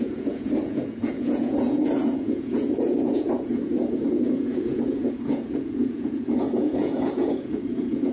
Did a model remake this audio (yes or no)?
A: yes